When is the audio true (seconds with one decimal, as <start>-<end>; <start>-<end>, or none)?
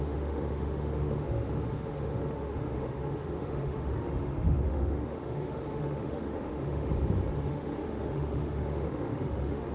6.9-7.5